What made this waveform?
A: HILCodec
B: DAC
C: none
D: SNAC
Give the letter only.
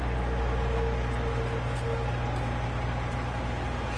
C